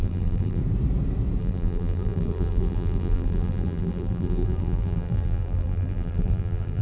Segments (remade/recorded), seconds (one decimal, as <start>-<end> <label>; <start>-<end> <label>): 0.0-0.6 remade; 0.6-1.4 recorded; 1.4-6.8 remade